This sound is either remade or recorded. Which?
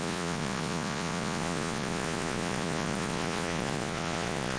remade